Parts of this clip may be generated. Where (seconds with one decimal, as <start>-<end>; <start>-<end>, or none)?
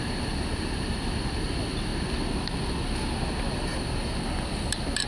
none